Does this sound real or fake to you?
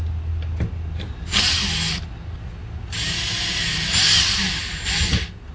real